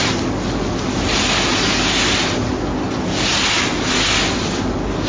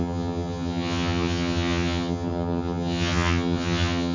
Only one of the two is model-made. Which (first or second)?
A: second